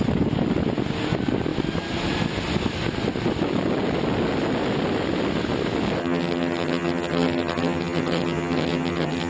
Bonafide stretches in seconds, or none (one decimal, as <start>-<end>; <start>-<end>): 0.0-6.0